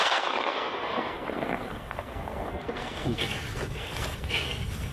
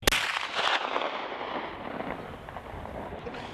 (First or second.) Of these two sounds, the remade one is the first